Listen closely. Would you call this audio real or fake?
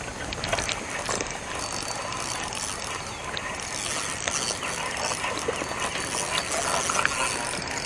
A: real